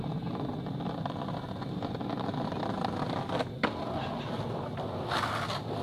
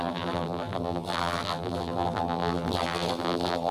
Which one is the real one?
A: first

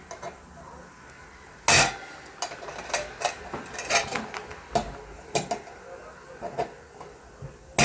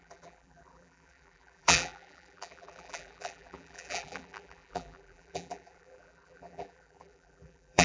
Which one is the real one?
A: first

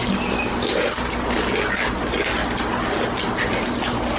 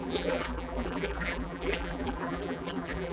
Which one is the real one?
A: first